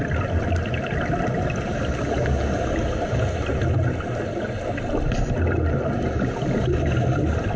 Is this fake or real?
real